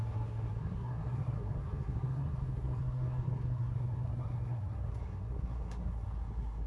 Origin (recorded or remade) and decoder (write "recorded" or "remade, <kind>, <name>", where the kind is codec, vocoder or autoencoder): remade, codec, SNAC